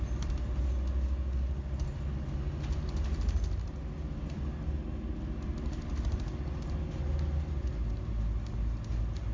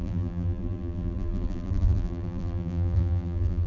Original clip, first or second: first